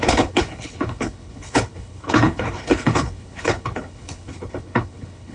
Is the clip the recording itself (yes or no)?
no